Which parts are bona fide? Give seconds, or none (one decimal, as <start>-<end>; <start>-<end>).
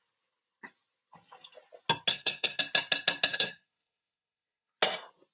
0.0-2.1; 2.6-3.3; 4.7-5.3